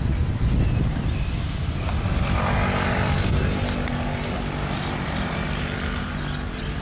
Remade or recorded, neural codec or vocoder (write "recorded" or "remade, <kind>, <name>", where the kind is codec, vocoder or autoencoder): recorded